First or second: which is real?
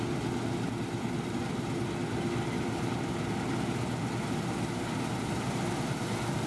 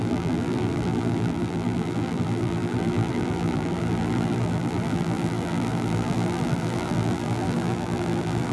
first